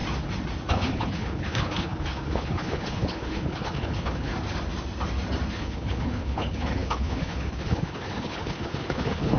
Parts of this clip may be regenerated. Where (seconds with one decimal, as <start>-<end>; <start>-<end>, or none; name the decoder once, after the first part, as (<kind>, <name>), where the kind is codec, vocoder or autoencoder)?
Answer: 0.7-4.3 (codec, HILCodec); 5.5-9.4